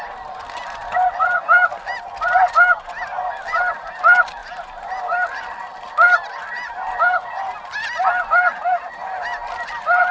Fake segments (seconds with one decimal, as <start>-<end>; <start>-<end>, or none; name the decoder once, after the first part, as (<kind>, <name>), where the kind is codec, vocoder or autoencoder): none